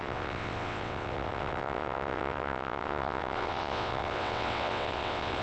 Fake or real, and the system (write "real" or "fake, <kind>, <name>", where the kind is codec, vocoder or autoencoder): fake, vocoder, WaveNeXt